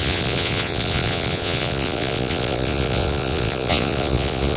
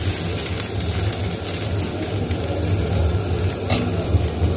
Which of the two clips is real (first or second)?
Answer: second